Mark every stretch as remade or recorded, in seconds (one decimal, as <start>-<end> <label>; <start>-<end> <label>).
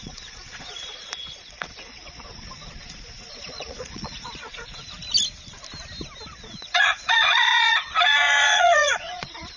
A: 0.0-5.0 remade; 5.0-6.3 recorded; 6.3-9.6 remade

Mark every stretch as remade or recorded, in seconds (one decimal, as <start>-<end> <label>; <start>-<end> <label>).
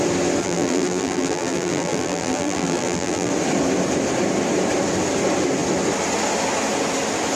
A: 0.0-0.4 recorded; 0.4-3.3 remade; 3.3-7.4 recorded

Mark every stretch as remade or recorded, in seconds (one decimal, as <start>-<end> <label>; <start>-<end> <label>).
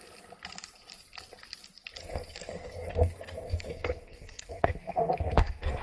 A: 0.0-2.0 recorded; 2.0-5.8 remade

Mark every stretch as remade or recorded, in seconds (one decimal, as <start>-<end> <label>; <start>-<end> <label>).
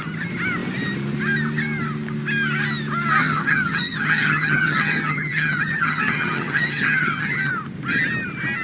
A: 0.0-3.2 recorded; 3.2-7.5 remade; 7.5-8.6 recorded